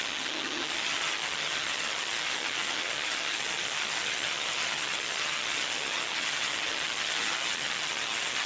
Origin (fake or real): fake